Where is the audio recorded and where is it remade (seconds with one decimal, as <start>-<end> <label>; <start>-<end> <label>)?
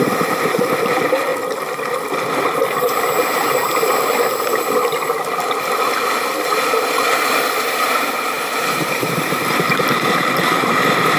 0.0-1.3 remade; 1.3-2.4 recorded; 2.4-3.6 remade; 3.6-7.8 recorded; 7.8-11.2 remade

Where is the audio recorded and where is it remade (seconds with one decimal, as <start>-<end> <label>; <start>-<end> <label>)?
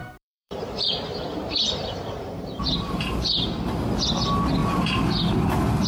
0.0-3.0 remade; 3.0-4.6 recorded; 4.6-5.5 remade; 5.5-5.9 recorded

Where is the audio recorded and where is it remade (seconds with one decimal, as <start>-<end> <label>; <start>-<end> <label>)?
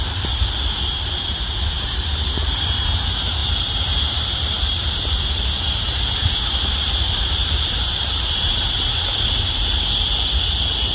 0.0-3.4 recorded; 3.4-5.2 remade; 5.2-6.2 recorded; 6.2-9.6 remade; 9.6-10.9 recorded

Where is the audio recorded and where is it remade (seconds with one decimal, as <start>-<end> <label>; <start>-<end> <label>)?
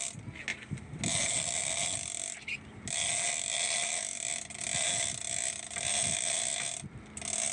0.0-0.5 recorded; 0.5-1.0 remade; 1.0-7.5 recorded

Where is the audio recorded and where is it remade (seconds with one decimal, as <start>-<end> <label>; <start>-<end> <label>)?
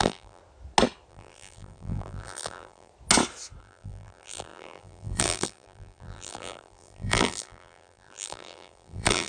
0.0-0.4 remade; 0.4-1.1 recorded; 1.1-2.9 remade; 2.9-3.6 recorded; 3.6-9.3 remade